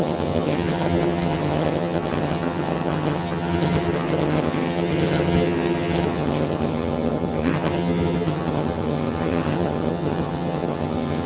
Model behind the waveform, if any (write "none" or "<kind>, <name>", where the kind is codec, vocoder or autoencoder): vocoder, HiFi-GAN